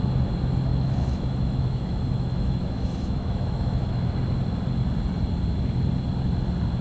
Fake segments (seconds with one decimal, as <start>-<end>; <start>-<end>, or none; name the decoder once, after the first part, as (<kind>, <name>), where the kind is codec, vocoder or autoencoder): 0.7-4.1 (autoencoder, DAC-VAE)